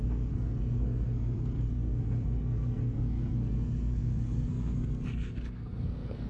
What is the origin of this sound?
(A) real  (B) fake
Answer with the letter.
B